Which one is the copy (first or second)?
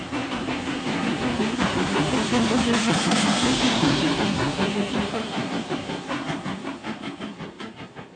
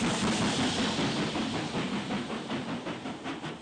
first